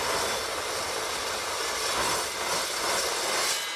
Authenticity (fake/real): real